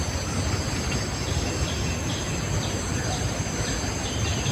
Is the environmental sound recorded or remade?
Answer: recorded